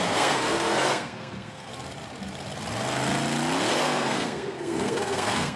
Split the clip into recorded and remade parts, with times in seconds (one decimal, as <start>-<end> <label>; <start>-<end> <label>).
0.0-1.7 remade; 1.7-3.7 recorded; 3.7-5.6 remade